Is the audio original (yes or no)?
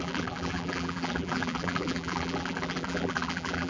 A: no